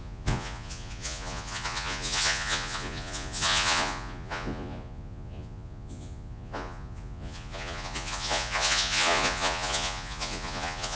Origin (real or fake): fake